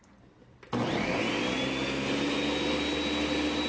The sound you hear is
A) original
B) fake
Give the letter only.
A